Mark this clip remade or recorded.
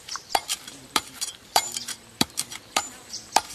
remade